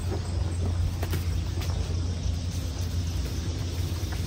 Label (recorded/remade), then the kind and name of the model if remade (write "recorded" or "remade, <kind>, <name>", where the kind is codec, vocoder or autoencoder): recorded